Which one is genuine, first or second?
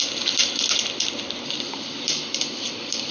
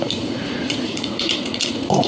first